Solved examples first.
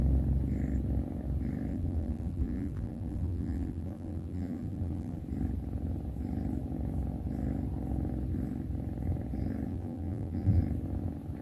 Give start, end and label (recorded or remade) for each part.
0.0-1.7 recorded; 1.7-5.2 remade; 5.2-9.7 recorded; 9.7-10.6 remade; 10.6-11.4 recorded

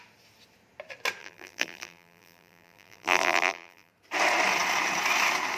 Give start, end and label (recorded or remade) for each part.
0.0-1.2 recorded; 1.2-3.9 remade; 3.9-5.6 recorded